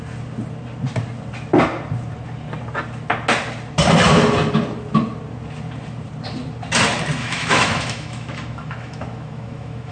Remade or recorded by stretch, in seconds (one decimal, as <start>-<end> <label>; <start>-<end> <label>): 0.0-7.2 recorded; 7.2-9.9 remade